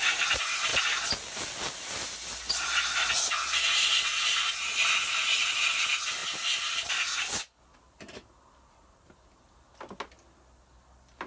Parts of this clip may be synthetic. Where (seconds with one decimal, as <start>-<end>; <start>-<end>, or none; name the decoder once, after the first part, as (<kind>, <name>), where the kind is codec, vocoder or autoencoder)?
none